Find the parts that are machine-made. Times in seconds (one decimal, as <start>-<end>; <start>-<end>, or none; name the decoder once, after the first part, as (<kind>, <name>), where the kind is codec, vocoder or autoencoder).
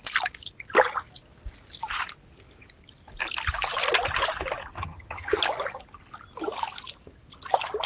4.8-5.4 (vocoder, HiFi-GAN)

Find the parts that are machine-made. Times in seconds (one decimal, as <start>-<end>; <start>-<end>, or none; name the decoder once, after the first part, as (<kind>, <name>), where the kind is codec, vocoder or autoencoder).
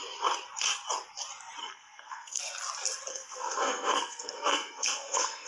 1.6-2.4 (codec, SNAC); 3.1-5.5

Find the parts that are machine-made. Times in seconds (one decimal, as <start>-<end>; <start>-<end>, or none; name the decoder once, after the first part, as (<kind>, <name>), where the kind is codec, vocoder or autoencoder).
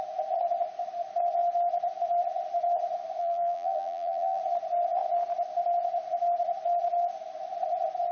3.2-4.4 (vocoder, BigVGAN v2)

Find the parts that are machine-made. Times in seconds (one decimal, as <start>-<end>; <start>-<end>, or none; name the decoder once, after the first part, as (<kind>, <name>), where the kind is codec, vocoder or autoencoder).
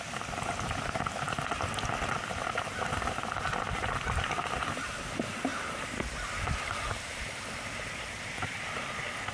2.4-4.8 (vocoder, BigVGAN v2); 5.5-8.6